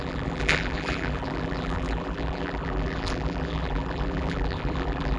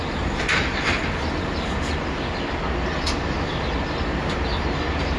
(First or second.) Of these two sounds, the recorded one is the second